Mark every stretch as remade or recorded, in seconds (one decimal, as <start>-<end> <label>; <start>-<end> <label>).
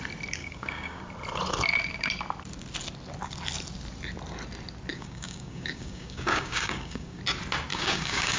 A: 0.0-0.4 recorded; 0.4-1.0 remade; 1.0-4.9 recorded; 4.9-7.2 remade; 7.2-7.7 recorded; 7.7-8.4 remade